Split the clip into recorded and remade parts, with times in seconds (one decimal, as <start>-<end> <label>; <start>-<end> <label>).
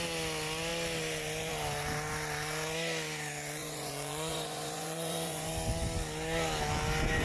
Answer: 0.0-3.6 recorded; 3.6-5.5 remade; 5.5-7.2 recorded